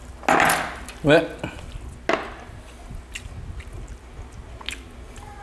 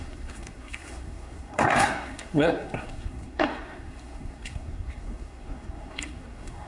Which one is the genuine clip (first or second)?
first